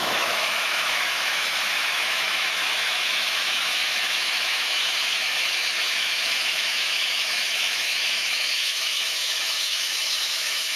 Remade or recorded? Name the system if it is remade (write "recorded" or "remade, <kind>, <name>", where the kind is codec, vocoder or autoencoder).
remade, autoencoder, DAC-VAE